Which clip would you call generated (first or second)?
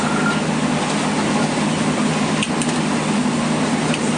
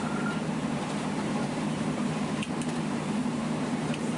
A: second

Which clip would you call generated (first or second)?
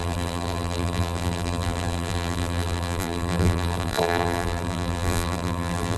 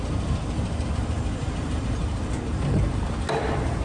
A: first